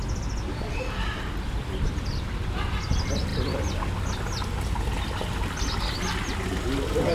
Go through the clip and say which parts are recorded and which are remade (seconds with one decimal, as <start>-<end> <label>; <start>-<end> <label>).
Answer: 0.0-7.1 recorded